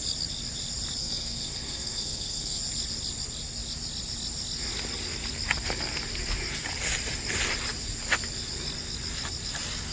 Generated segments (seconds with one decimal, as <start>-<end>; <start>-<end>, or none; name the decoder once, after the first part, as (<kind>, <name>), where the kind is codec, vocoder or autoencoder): 1.0-2.6 (codec, SNAC)